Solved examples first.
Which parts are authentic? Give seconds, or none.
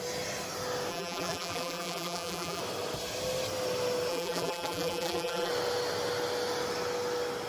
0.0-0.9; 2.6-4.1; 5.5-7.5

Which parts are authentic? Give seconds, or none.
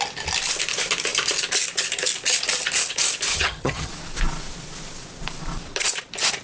0.0-3.3; 3.9-6.4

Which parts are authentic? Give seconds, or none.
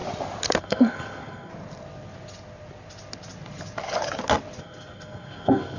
0.0-0.6; 1.5-4.6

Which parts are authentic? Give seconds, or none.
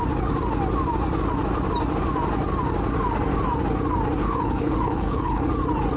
0.0-4.2; 5.4-6.0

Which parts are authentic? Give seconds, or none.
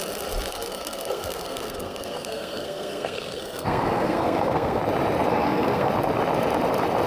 0.0-0.5; 4.8-5.3; 5.9-7.1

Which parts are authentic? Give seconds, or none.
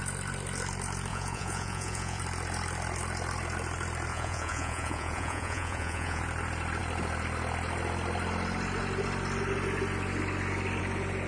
0.0-1.1; 2.2-4.1; 6.2-11.3